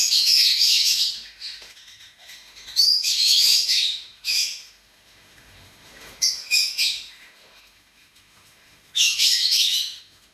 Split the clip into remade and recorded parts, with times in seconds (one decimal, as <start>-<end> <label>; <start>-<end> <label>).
0.0-10.3 remade